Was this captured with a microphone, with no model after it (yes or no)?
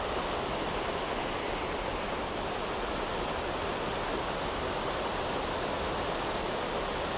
yes